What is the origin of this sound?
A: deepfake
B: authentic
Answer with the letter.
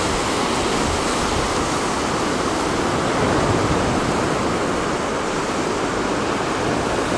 B